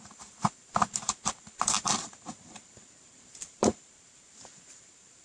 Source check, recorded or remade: remade